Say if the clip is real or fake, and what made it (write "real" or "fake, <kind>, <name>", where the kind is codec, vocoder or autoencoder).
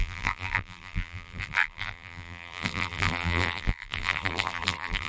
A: fake, vocoder, BigVGAN v2